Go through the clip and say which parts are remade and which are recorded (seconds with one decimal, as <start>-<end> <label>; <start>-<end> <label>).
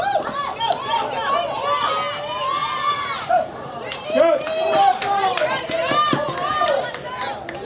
0.0-2.6 recorded; 2.6-5.7 remade; 5.7-6.5 recorded; 6.5-7.1 remade; 7.1-7.7 recorded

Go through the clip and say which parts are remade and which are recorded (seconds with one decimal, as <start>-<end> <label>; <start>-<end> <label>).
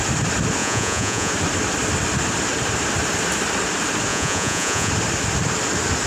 0.0-0.6 recorded; 0.6-1.3 remade; 1.3-4.1 recorded; 4.1-4.9 remade; 4.9-6.1 recorded